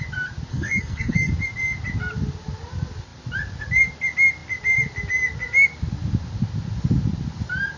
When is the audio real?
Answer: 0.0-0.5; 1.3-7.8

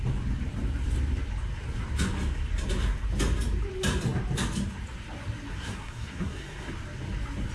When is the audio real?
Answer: 0.0-5.5; 6.7-7.5

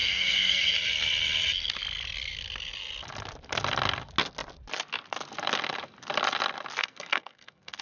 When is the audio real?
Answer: 0.7-6.8

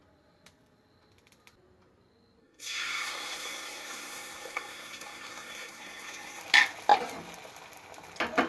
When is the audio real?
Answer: 0.0-2.4; 6.4-8.5

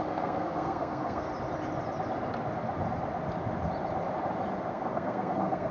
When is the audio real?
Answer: 1.3-4.7

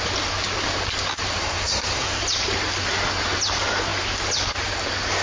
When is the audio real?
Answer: 0.0-1.4; 2.2-5.2